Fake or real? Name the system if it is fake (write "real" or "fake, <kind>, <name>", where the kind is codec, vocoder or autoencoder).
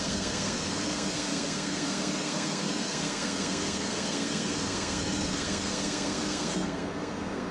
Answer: fake, codec, SNAC